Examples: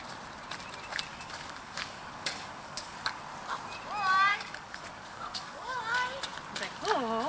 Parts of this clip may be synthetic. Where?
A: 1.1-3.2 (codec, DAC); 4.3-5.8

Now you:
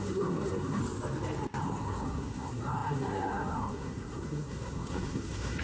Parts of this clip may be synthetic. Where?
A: 0.0-0.8 (codec, SNAC); 1.6-5.6

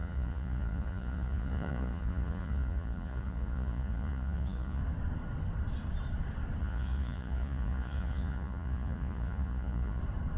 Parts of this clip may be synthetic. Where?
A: 0.0-4.8 (vocoder, Vocos); 6.6-10.0

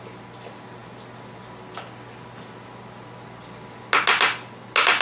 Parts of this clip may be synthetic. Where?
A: none

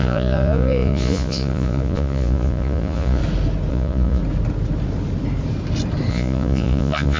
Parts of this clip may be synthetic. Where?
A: 0.0-3.2 (vocoder, Vocos); 3.7-4.2; 6.1-7.2

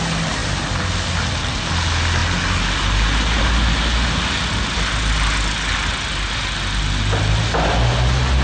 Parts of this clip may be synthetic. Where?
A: none

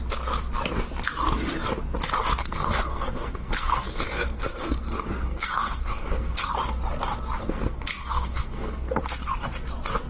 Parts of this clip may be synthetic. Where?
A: 2.4-6.5 (codec, SNAC); 7.4-9.0

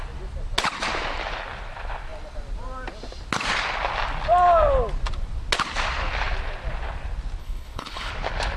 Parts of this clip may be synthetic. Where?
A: 7.4-8.1 (codec, HILCodec)